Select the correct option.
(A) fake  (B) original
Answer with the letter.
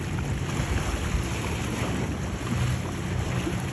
B